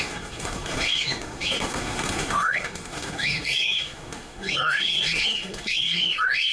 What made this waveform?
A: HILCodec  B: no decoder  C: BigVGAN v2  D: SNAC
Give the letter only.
D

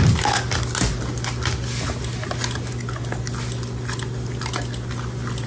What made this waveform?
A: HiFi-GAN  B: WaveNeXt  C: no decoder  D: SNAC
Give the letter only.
C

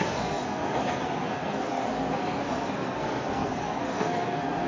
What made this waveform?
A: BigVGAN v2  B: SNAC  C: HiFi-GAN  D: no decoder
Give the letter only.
B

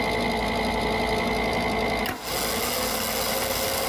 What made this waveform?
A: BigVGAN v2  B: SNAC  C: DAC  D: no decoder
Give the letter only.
D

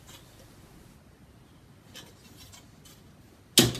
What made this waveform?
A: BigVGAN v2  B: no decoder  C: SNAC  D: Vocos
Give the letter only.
B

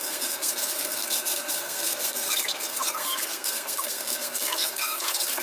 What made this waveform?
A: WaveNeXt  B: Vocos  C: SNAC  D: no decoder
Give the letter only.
C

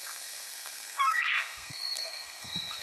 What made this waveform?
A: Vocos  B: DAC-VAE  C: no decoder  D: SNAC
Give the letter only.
D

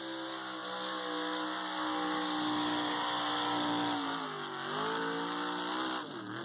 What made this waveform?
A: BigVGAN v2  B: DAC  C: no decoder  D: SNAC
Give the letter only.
C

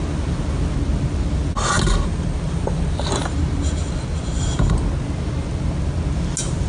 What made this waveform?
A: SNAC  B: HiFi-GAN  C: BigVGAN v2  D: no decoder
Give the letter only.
D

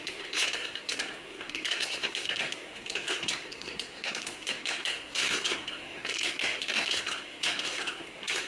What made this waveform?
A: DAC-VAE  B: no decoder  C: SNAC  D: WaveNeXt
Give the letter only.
C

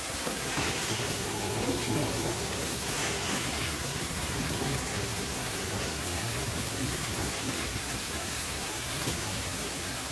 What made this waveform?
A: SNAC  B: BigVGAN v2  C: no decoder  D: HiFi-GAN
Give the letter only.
A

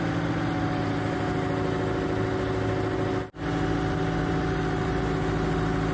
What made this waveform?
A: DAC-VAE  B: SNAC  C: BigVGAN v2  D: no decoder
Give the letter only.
D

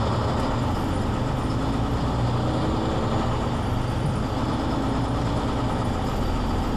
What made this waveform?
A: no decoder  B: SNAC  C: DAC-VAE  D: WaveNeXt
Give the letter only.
A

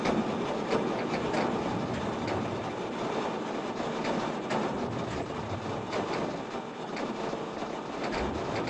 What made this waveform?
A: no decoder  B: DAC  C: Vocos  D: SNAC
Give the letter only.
A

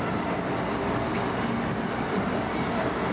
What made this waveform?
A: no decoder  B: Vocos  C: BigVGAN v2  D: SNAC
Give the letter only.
A